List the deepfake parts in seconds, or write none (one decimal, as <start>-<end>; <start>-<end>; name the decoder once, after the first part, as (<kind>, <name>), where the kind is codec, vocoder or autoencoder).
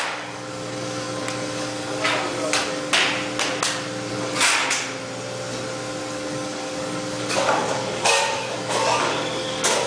0.0-3.0 (codec, DAC); 4.1-4.6; 6.0-9.9